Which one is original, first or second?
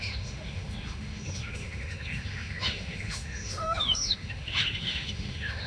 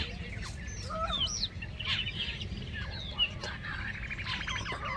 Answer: second